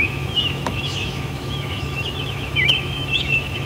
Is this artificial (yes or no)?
yes